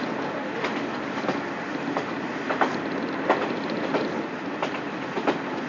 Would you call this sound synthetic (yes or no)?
no